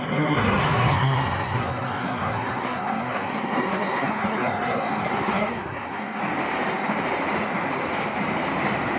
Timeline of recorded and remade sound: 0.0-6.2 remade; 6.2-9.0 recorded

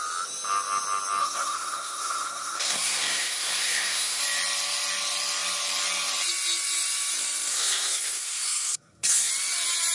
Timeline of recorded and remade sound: 0.0-1.2 recorded; 1.2-4.2 remade; 4.2-7.5 recorded; 7.5-9.3 remade; 9.3-9.9 recorded

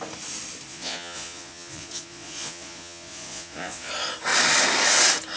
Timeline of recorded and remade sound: 0.0-0.7 recorded; 0.7-3.9 remade; 3.9-5.4 recorded

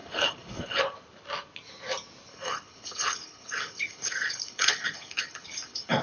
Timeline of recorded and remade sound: 0.0-0.8 remade; 0.8-2.3 recorded; 2.3-6.0 remade